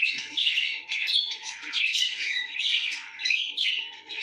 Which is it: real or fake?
fake